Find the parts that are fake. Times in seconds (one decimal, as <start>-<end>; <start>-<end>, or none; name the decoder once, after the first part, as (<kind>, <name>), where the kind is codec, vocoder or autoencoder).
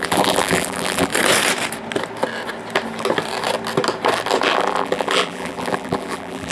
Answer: 0.0-1.1 (vocoder, BigVGAN v2); 4.4-6.5